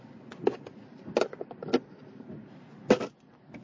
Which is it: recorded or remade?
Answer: recorded